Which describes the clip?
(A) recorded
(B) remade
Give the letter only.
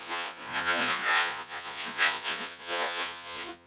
B